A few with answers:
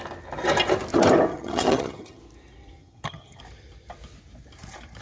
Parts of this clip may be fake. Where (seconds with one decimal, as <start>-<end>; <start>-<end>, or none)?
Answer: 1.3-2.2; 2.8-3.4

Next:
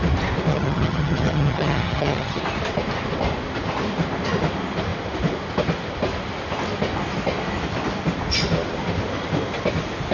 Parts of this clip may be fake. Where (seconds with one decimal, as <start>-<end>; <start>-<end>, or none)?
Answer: 0.5-2.4

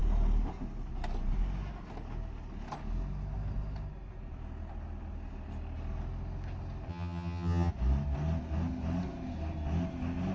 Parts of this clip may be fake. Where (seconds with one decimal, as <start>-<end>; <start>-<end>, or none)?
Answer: 6.9-7.7

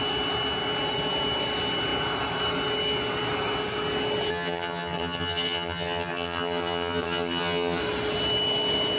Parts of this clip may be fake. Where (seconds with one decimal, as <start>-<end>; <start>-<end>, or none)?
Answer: 4.3-7.8